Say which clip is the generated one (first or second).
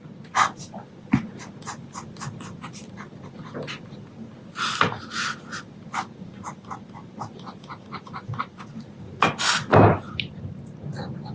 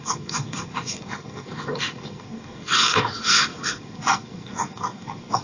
second